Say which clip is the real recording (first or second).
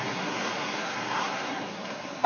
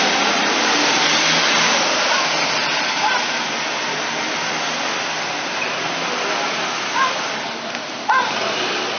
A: second